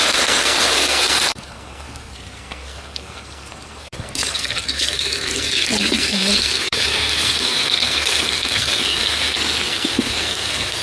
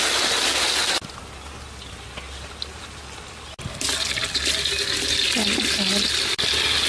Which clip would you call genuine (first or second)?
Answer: second